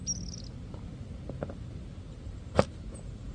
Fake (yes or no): no